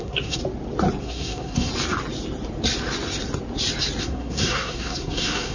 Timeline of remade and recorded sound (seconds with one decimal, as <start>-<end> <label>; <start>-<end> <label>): 0.0-0.4 remade; 0.4-1.0 recorded; 1.0-1.7 remade; 1.7-4.0 recorded; 4.0-5.5 remade